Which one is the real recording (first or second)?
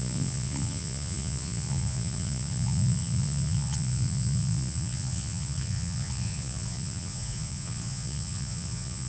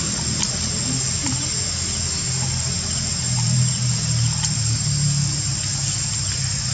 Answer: second